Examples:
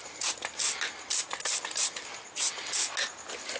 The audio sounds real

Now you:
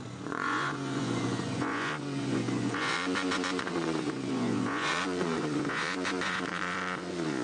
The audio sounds fake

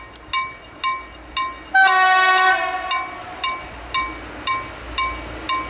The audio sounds real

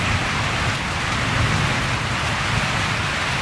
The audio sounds real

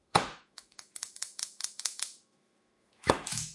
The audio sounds fake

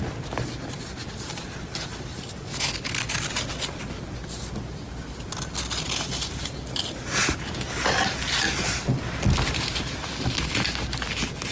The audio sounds real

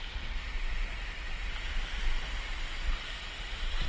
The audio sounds real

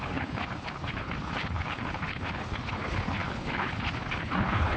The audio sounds fake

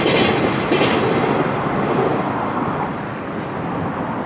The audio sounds real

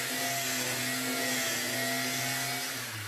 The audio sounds real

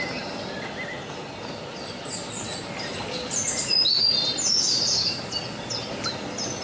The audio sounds real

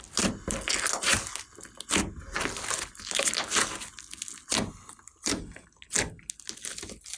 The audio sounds real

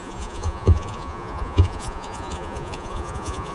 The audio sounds fake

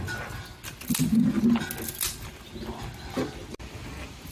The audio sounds real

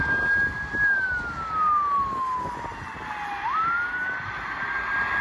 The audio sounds real